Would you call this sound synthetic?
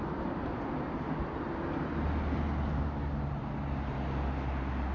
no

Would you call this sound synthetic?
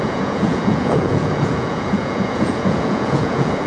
yes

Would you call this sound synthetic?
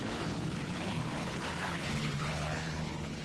yes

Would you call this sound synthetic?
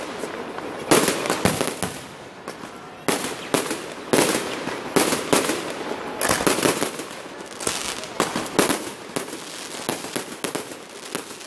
no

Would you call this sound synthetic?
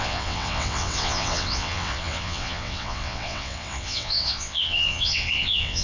yes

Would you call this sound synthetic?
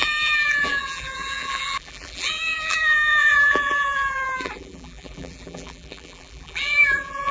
yes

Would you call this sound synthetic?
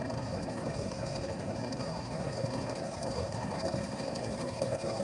yes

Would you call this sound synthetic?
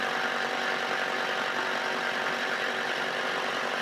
no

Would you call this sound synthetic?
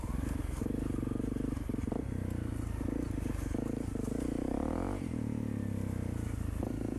no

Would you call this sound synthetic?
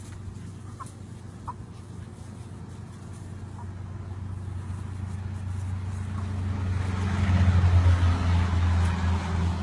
no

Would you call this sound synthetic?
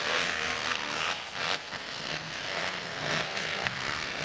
yes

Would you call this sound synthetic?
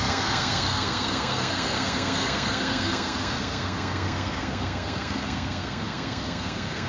yes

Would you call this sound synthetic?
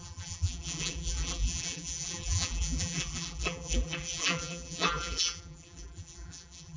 yes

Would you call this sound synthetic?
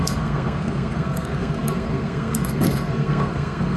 yes